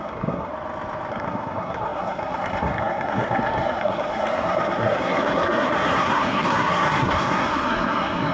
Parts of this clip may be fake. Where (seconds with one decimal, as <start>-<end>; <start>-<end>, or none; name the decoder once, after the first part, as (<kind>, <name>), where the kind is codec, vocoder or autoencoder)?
0.0-0.5 (codec, SNAC); 1.1-8.3